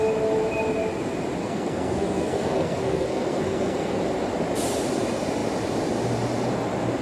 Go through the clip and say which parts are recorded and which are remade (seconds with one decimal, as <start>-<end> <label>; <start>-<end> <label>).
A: 0.0-1.4 recorded; 1.4-4.0 remade; 4.0-7.0 recorded